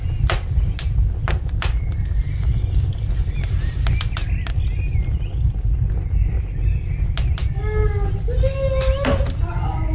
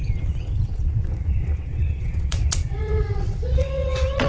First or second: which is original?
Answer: first